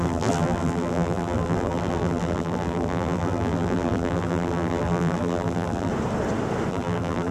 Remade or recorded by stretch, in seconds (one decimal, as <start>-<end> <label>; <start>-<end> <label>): 0.0-5.9 remade; 5.9-6.7 recorded; 6.7-7.3 remade

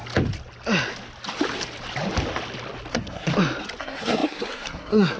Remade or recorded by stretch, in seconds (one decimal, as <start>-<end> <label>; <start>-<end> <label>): 0.0-2.9 recorded; 2.9-3.3 remade; 3.3-3.8 recorded; 3.8-5.2 remade

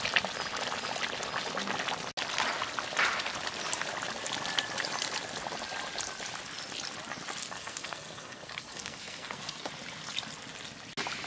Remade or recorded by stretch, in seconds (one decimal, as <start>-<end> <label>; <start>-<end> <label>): 0.0-7.4 recorded; 7.4-9.7 remade; 9.7-11.3 recorded

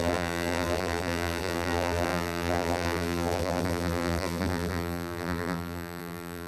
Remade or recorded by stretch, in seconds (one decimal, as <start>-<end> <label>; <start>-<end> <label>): 0.0-6.5 remade

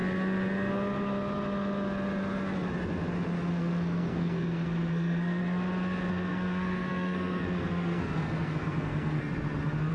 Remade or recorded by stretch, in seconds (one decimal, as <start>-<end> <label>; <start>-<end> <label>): 0.0-3.5 recorded; 3.5-5.4 remade; 5.4-6.1 recorded; 6.1-9.2 remade; 9.2-9.9 recorded

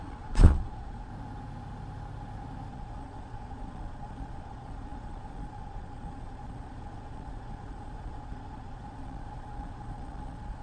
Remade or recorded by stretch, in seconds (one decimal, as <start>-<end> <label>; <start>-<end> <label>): 0.0-1.1 remade; 1.1-2.7 recorded; 2.7-10.6 remade

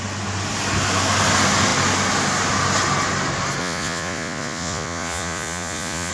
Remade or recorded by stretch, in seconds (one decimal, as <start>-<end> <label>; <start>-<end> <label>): 0.0-3.6 recorded; 3.6-6.1 remade

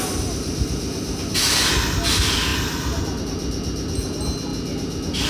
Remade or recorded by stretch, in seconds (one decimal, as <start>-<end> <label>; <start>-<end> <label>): 0.0-5.3 recorded